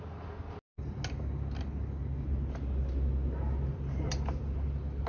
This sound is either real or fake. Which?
real